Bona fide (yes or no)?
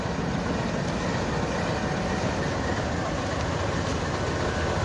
yes